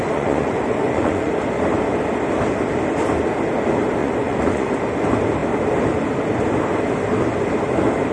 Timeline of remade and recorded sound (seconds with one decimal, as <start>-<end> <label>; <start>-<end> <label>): 0.0-1.3 remade; 1.3-4.0 recorded; 4.0-4.7 remade; 4.7-8.1 recorded